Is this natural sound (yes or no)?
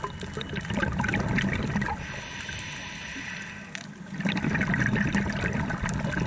yes